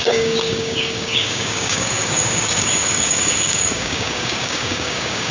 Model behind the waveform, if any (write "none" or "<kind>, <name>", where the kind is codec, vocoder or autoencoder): codec, DAC